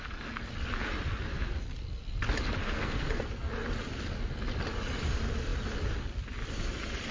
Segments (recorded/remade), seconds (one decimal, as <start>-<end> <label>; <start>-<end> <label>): 0.0-2.6 recorded; 2.6-3.5 remade; 3.5-7.1 recorded